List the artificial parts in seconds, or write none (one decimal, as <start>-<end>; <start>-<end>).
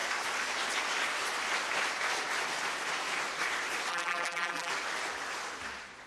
3.9-4.7